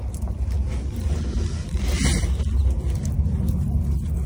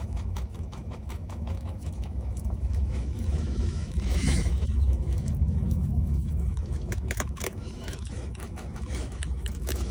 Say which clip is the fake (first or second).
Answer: second